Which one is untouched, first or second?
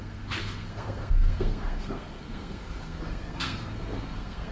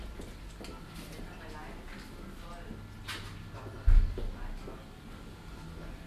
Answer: second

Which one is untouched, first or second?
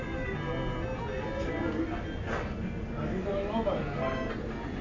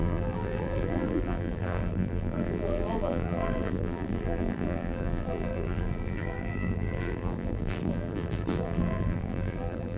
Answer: first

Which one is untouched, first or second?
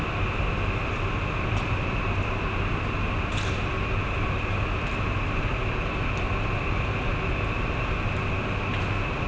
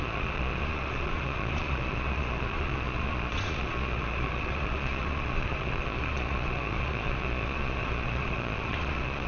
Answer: first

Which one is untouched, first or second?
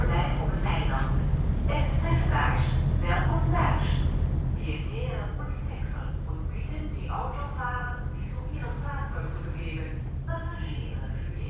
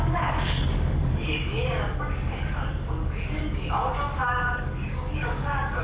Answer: first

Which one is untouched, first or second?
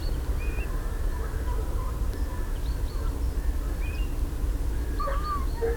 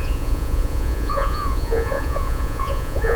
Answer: first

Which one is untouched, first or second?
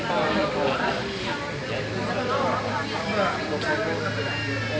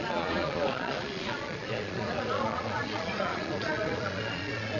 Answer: first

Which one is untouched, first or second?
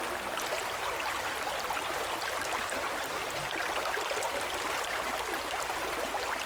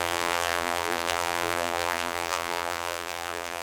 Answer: first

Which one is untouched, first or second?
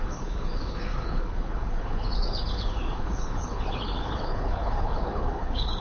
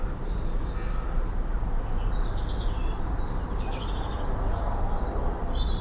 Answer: second